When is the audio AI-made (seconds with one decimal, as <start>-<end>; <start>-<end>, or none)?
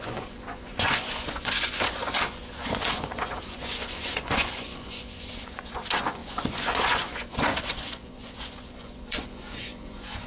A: 0.0-10.3